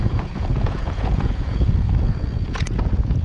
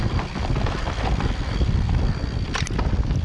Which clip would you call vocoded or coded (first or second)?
first